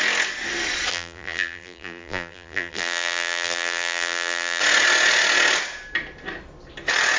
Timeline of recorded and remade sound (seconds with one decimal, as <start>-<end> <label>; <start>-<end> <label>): 0.0-0.9 recorded; 0.9-4.6 remade; 4.6-7.2 recorded